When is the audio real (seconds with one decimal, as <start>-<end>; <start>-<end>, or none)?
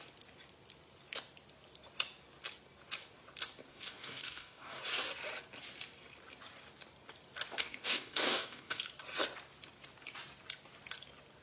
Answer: 0.0-3.7; 4.8-7.5; 8.8-11.4